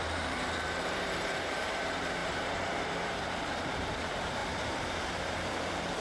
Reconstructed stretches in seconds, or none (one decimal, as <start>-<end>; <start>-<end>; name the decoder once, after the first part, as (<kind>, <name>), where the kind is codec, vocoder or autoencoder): 0.0-6.0 (vocoder, BigVGAN v2)